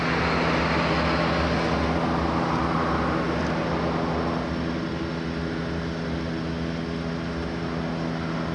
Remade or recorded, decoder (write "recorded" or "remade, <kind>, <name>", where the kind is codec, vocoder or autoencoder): recorded